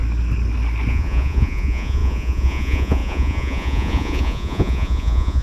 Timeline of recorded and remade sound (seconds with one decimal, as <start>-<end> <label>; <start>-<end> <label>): 0.0-0.9 recorded; 0.9-5.4 remade